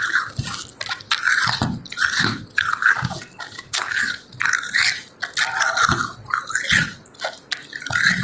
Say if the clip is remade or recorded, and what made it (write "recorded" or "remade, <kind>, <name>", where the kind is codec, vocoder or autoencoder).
recorded